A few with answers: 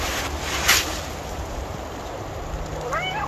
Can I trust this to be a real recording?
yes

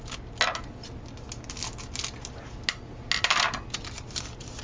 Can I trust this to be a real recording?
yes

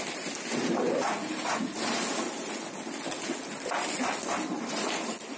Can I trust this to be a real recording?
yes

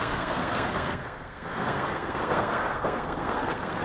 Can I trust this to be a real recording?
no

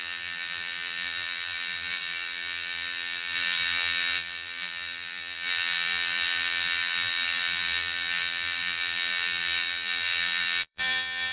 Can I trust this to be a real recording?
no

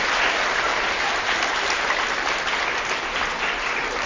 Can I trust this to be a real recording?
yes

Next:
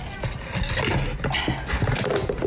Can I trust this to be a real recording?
yes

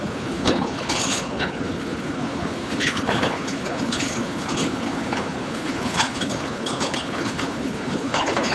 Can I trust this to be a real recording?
no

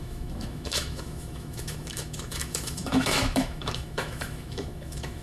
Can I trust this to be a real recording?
no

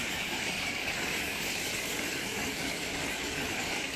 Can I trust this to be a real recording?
no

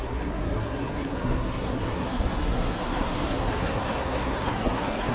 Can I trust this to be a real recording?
no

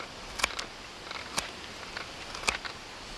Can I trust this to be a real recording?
yes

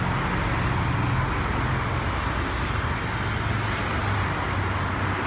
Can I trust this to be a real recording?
yes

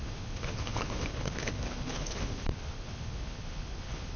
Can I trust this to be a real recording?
no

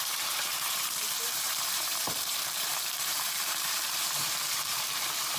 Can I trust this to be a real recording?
no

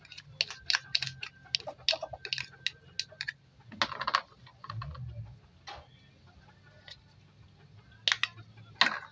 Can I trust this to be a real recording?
yes